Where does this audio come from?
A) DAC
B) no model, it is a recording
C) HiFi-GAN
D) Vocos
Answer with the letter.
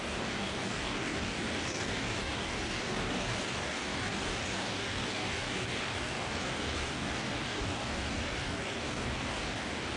A